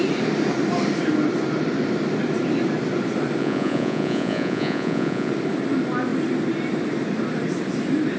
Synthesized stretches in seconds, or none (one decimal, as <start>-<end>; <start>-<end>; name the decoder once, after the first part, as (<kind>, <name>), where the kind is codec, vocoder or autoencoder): 3.4-5.3 (vocoder, Vocos)